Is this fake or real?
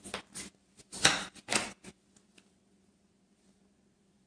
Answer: real